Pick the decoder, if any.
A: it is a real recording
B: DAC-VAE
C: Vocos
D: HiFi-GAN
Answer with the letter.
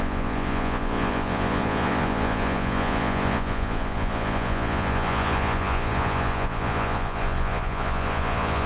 C